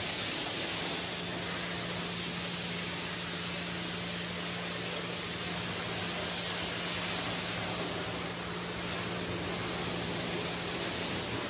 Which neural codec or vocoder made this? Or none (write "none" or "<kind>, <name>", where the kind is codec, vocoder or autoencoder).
none